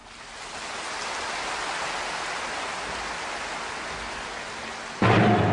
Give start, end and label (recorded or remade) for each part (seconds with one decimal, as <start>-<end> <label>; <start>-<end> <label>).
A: 0.0-5.5 recorded